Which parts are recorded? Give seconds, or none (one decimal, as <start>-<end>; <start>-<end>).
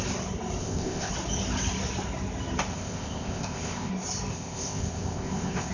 0.0-0.6; 1.1-2.7; 3.9-4.3